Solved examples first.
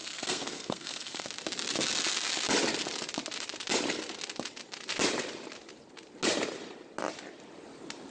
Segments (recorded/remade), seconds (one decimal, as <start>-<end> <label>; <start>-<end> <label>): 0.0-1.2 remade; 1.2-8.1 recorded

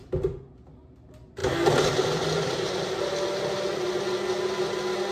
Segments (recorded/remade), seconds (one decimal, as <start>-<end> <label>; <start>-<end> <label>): 0.0-5.1 recorded

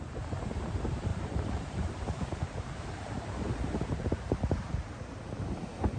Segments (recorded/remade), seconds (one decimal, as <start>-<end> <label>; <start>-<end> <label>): 0.0-1.1 recorded; 1.1-4.7 remade; 4.7-6.0 recorded